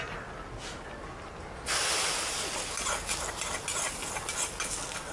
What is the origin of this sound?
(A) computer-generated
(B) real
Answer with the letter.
B